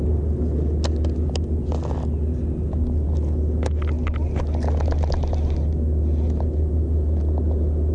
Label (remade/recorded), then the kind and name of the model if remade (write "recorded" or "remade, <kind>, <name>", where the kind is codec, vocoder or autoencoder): recorded